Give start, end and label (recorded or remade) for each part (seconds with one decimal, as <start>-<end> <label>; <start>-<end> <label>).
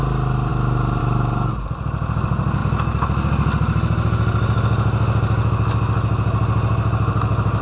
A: 0.0-7.6 recorded